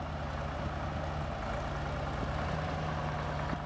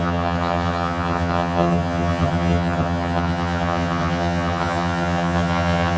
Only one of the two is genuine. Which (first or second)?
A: first